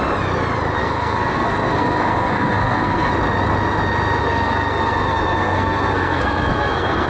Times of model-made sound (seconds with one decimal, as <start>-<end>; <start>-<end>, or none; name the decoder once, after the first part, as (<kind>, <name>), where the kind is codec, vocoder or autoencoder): 0.8-3.1 (codec, SNAC); 4.2-7.1